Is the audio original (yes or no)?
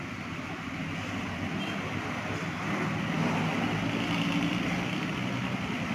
yes